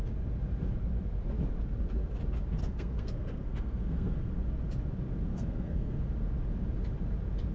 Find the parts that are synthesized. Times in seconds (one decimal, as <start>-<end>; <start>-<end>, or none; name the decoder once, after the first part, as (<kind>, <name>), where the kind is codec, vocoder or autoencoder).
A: 2.6-4.3 (codec, SNAC); 5.3-6.0